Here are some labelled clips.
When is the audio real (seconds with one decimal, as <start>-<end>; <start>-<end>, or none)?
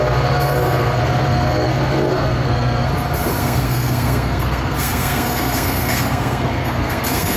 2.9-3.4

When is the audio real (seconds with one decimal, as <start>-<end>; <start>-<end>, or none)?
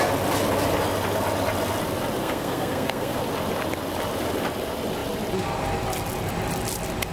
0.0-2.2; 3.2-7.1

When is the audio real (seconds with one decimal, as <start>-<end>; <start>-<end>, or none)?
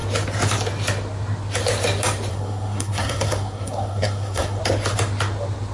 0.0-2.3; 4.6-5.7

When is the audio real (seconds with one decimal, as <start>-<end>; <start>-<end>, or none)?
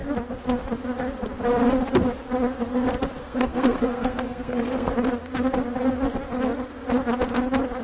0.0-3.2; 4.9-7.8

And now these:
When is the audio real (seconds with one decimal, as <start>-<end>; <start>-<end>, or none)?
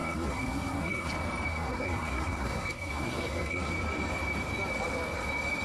1.1-1.5; 3.7-5.6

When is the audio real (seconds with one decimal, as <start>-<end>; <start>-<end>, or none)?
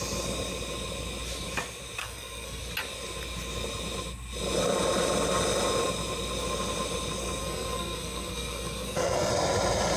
0.0-2.0; 2.6-7.4; 9.3-10.0